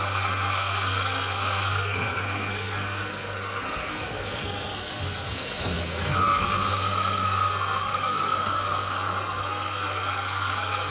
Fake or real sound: fake